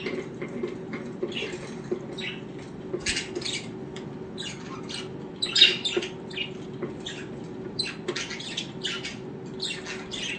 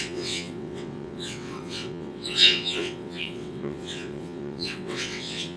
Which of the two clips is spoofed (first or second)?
second